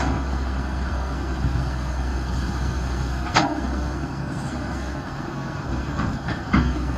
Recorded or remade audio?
remade